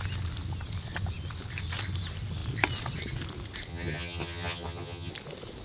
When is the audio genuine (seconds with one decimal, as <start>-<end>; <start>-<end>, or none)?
0.0-3.7; 5.1-5.6